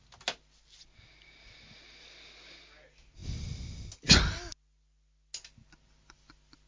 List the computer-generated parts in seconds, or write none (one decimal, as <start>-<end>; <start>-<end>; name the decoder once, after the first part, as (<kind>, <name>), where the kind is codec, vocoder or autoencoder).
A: none